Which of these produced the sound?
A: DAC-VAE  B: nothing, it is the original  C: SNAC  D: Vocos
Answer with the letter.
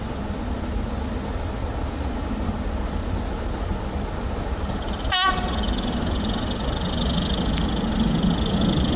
B